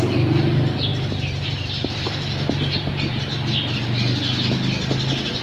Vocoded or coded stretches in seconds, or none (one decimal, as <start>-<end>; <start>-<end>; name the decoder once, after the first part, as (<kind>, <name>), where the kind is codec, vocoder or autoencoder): 0.9-3.0 (vocoder, BigVGAN v2)

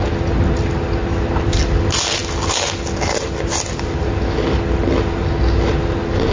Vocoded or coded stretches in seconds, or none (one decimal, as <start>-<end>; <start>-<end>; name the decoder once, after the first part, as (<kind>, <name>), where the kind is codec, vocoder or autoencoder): none

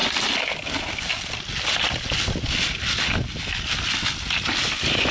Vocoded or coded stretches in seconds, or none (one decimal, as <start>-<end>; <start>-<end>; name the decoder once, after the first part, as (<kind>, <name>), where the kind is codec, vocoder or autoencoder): none

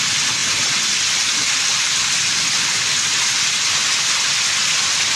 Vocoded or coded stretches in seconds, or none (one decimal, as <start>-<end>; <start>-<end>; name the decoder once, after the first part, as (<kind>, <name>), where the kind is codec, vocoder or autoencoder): none

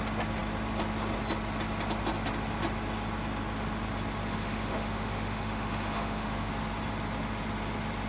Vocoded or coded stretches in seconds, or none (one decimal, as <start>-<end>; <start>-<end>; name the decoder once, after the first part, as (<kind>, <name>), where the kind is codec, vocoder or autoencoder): 4.2-6.5 (autoencoder, DAC-VAE)